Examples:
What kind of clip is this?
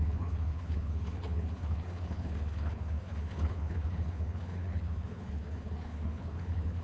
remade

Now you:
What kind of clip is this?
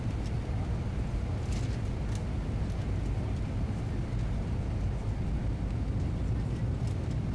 recorded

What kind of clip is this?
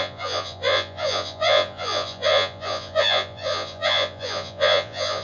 remade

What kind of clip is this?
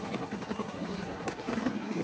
remade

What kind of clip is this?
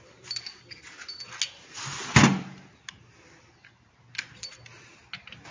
recorded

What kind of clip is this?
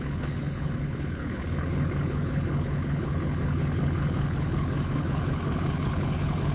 remade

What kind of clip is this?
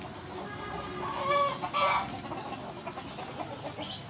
recorded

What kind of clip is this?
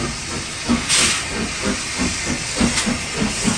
recorded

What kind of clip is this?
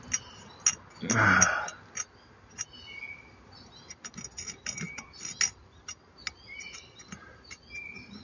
recorded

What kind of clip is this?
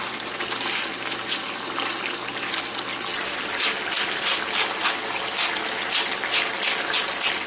recorded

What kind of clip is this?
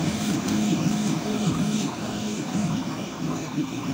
remade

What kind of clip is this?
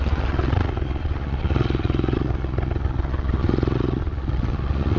remade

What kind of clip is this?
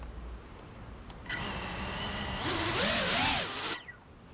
recorded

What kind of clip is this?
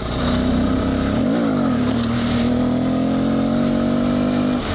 recorded